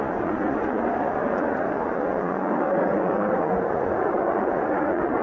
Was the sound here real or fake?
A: fake